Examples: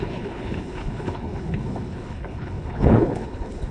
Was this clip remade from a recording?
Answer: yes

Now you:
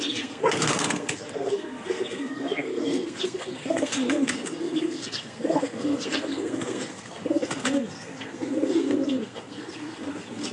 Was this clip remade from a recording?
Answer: yes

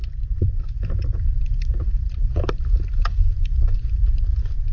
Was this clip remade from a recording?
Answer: yes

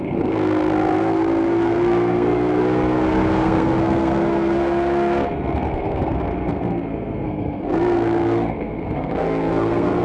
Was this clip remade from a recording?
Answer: yes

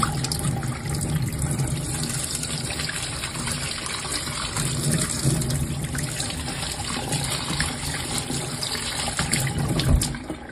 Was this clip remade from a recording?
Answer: yes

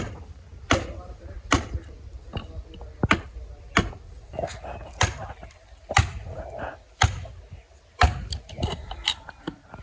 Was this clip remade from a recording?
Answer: no